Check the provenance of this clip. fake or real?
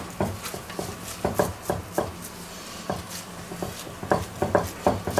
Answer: real